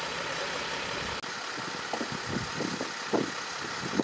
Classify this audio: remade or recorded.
recorded